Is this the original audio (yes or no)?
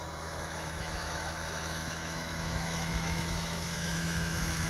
no